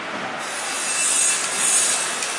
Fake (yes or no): no